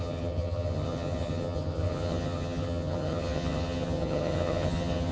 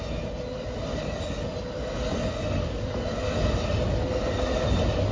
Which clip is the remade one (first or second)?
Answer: first